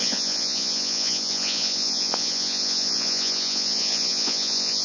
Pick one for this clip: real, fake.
fake